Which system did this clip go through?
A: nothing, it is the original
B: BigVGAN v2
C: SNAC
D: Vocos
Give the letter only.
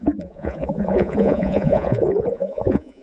D